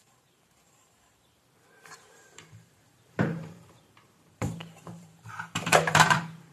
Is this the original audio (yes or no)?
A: no